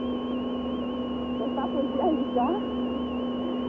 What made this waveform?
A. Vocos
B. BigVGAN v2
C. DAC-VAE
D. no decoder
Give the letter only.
D